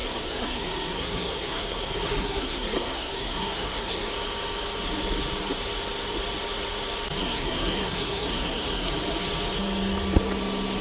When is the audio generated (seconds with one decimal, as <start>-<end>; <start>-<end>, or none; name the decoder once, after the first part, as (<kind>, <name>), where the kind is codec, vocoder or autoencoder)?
0.0-4.1 (codec, SNAC); 7.2-8.9